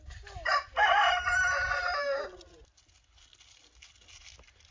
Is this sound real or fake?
real